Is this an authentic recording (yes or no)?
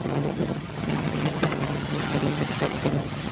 no